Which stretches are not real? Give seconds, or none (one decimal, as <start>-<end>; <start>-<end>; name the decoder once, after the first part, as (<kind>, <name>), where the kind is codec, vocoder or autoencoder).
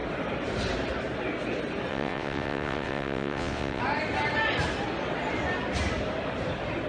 1.9-3.8 (vocoder, WaveNeXt)